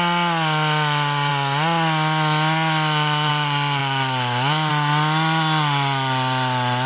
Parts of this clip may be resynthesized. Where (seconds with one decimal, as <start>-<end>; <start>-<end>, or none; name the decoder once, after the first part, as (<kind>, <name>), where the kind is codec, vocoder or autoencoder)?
none